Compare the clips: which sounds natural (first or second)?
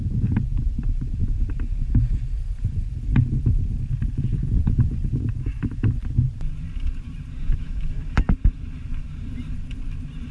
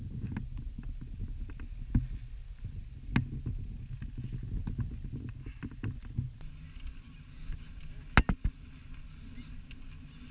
second